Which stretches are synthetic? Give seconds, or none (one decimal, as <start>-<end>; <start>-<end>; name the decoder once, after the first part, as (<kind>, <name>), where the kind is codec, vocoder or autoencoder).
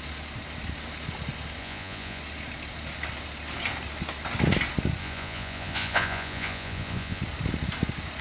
1.6-2.2 (vocoder, Vocos); 5.0-7.2